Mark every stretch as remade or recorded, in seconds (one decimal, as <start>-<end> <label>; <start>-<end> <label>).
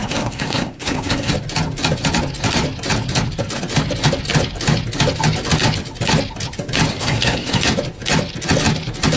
0.0-1.3 remade; 1.3-6.9 recorded; 6.9-7.6 remade; 7.6-9.2 recorded